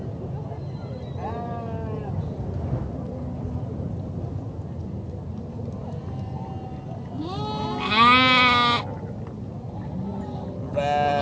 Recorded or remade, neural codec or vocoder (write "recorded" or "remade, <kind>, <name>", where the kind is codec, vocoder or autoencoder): recorded